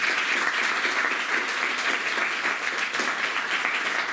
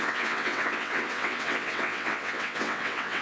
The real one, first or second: first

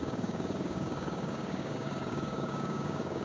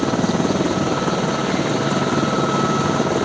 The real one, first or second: second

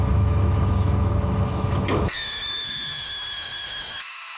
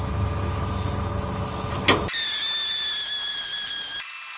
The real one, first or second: second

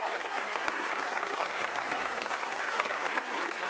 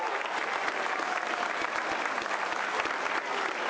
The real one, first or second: second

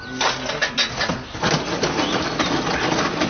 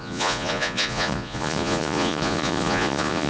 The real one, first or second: first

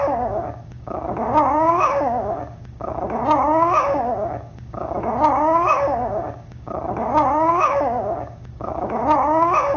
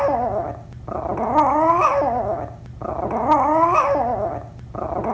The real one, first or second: second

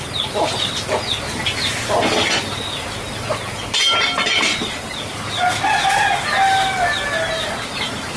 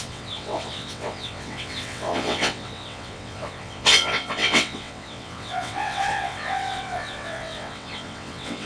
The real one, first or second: first